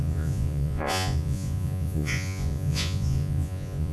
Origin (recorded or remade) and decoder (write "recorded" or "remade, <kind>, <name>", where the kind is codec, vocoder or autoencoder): remade, vocoder, Vocos